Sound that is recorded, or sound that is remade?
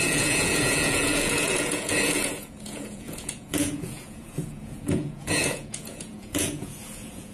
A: remade